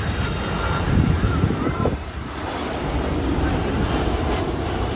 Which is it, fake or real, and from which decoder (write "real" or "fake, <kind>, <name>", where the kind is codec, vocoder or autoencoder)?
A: fake, vocoder, BigVGAN v2